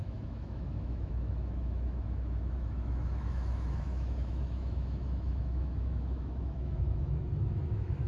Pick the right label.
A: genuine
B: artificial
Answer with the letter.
B